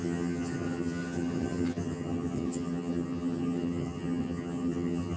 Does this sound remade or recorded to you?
remade